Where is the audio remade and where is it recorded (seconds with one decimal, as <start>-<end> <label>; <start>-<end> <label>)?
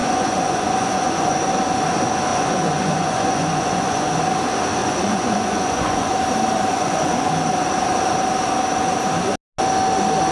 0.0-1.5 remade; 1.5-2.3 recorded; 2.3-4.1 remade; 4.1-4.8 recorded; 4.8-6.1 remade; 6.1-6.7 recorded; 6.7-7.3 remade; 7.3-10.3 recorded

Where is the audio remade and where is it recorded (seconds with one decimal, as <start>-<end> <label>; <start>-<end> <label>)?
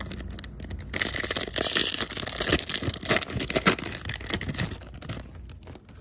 0.0-6.0 recorded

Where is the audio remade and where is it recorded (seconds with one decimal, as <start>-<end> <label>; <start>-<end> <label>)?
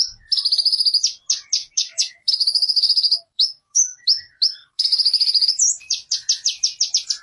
0.0-1.6 recorded; 1.6-5.6 remade; 5.6-7.2 recorded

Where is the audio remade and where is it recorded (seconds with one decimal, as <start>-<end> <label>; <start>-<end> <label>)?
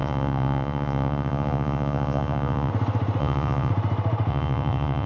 0.0-2.7 remade; 2.7-3.2 recorded; 3.2-3.7 remade; 3.7-4.3 recorded; 4.3-5.1 remade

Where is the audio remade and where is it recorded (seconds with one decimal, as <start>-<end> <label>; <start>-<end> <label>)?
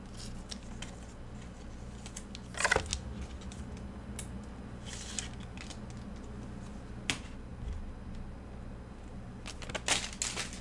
0.0-10.6 recorded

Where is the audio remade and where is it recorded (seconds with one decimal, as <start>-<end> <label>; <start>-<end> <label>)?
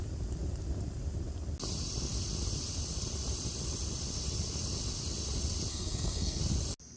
0.0-5.7 recorded; 5.7-6.4 remade; 6.4-7.0 recorded